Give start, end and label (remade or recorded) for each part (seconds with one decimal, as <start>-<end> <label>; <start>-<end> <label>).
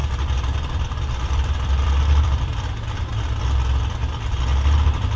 0.0-3.1 remade; 3.1-4.0 recorded; 4.0-5.2 remade